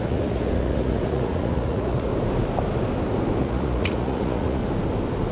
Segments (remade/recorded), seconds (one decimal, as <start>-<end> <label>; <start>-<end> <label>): 0.0-2.1 remade; 2.1-3.4 recorded; 3.4-4.6 remade; 4.6-5.3 recorded